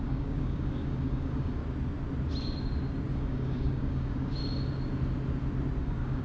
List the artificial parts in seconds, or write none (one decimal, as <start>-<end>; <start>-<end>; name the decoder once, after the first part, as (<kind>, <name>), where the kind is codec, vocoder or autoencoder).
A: 0.0-1.6 (codec, DAC); 3.1-4.4; 5.8-6.2